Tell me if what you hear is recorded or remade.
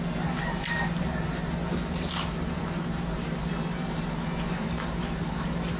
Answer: remade